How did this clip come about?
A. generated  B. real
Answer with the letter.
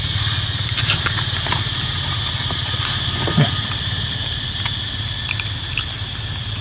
B